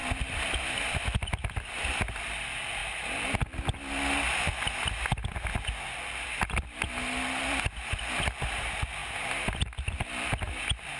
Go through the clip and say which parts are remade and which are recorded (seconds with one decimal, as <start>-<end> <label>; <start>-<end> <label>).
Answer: 0.0-1.3 remade; 1.3-11.0 recorded